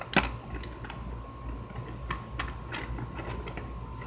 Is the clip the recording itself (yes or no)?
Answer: yes